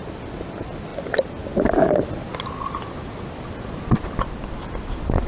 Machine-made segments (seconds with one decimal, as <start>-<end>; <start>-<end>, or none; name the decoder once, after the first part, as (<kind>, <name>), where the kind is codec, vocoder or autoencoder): none